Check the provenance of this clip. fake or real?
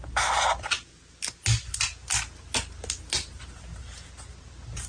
real